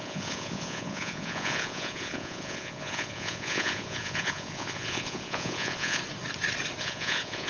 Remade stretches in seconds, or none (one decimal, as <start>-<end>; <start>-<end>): 0.0-6.0; 6.8-7.5